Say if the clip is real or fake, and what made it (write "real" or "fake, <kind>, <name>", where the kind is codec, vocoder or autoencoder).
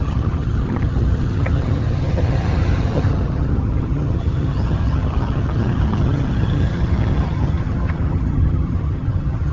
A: fake, vocoder, HiFi-GAN